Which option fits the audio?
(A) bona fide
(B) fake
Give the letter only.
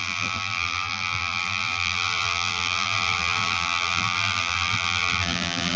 B